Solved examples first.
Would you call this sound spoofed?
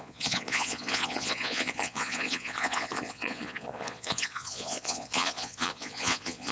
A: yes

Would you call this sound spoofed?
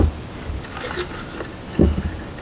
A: no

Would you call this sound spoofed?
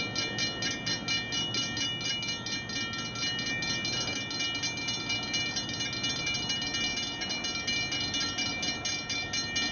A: no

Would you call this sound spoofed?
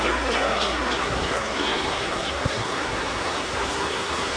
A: yes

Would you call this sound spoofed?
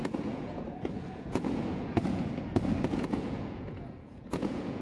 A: yes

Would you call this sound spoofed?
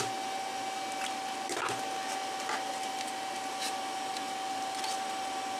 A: no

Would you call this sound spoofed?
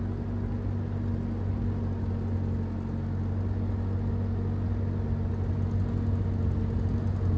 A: no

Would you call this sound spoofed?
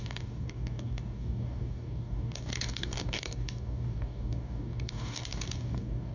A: yes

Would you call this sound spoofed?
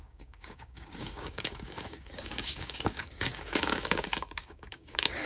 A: yes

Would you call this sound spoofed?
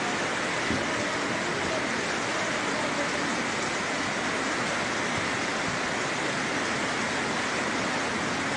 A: no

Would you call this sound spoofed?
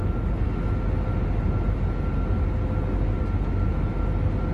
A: no